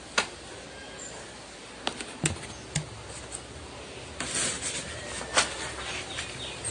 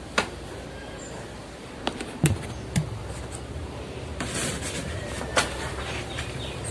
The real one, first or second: first